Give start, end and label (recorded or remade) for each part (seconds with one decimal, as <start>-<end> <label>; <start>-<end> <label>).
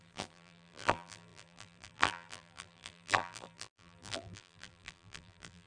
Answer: 0.0-5.7 remade